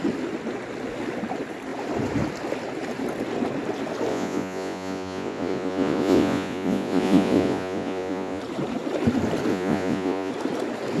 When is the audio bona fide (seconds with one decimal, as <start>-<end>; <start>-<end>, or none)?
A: 0.0-4.1; 8.4-9.5; 10.3-11.0